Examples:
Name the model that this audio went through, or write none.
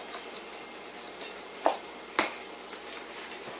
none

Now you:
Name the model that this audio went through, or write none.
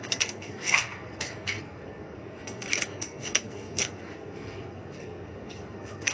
codec, SNAC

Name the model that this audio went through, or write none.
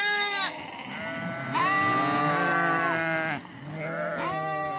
none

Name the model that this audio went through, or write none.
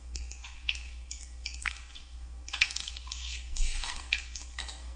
codec, SNAC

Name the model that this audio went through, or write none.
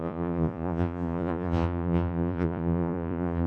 vocoder, Vocos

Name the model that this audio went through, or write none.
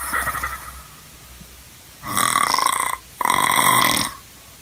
none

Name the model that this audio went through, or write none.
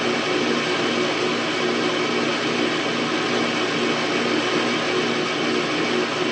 none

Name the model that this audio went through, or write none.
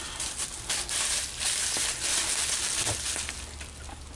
none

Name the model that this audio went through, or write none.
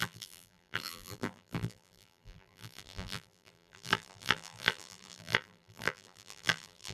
vocoder, BigVGAN v2